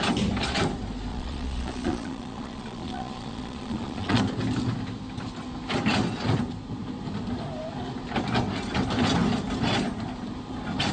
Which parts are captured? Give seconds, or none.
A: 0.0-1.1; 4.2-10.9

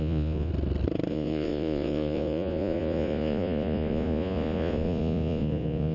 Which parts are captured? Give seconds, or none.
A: 0.5-1.1

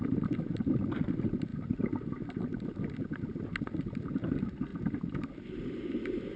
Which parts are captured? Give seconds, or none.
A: 0.0-6.4

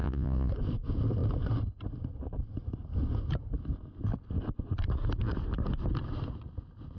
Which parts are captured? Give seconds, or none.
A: 0.5-7.0

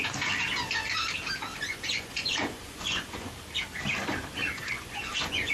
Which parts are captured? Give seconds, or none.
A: 0.0-1.5; 3.3-4.4